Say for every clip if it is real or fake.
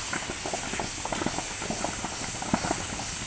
real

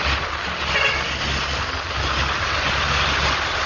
real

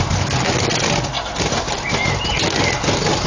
real